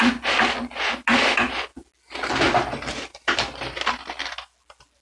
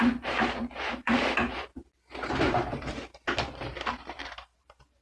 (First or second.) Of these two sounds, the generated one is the second